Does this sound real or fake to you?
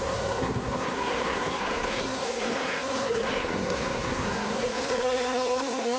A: fake